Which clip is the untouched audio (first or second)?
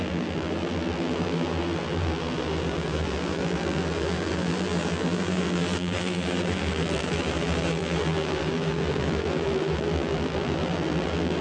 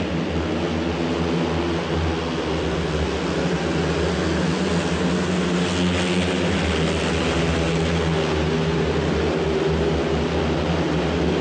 second